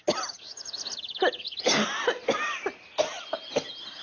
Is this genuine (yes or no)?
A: yes